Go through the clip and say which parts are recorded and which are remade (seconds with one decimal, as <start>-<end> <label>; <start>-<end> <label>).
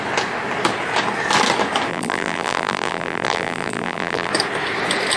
0.0-1.9 recorded; 1.9-4.3 remade; 4.3-5.2 recorded